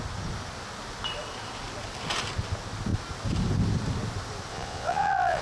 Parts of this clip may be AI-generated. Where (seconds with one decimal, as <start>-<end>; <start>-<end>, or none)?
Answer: 4.5-5.4